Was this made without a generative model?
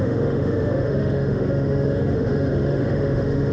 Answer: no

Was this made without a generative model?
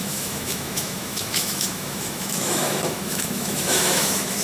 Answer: no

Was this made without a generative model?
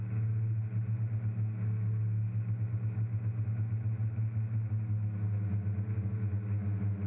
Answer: yes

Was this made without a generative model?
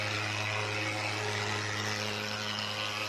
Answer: yes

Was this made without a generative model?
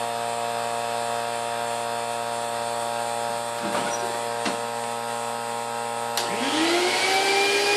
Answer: yes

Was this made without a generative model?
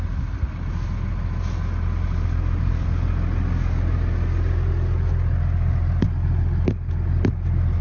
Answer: yes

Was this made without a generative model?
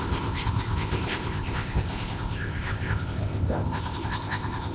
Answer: no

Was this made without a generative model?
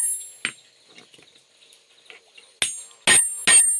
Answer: yes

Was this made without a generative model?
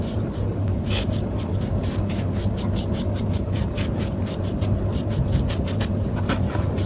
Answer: yes